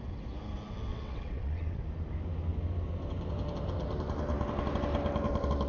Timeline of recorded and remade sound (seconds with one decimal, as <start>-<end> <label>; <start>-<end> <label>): 0.0-0.9 recorded; 0.9-1.8 remade; 1.8-5.7 recorded